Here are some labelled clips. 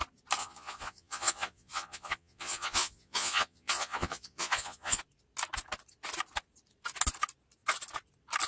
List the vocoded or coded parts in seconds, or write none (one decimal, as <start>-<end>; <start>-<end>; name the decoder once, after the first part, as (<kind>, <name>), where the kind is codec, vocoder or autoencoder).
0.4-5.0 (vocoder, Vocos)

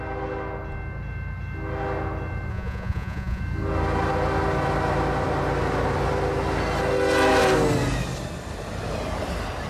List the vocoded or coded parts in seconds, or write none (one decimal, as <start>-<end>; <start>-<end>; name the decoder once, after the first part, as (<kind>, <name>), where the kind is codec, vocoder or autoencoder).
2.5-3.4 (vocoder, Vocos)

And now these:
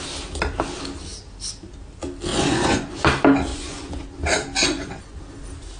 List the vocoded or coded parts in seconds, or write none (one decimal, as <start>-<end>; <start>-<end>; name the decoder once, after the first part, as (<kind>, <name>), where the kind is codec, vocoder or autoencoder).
2.3-2.9 (vocoder, Vocos); 3.5-4.0; 4.6-5.2

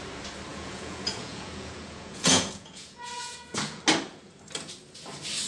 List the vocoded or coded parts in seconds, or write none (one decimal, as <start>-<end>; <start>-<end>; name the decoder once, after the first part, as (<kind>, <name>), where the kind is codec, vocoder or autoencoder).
0.5-3.8 (vocoder, Vocos)